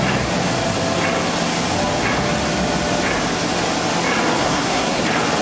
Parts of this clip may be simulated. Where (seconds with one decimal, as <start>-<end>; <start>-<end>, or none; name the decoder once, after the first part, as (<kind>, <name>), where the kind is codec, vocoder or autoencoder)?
4.4-5.0 (codec, SNAC)